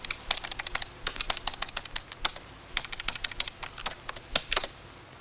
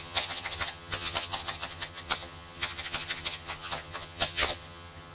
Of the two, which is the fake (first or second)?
second